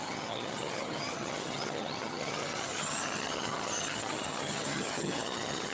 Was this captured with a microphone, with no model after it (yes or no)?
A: no